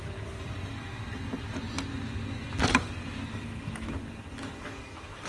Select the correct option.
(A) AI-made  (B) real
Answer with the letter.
B